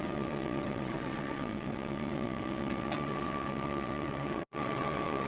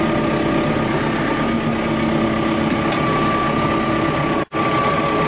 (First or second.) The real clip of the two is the second